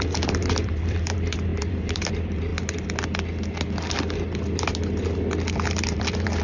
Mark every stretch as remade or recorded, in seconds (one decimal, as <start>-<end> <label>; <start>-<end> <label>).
0.0-2.5 remade; 2.5-5.5 recorded; 5.5-6.4 remade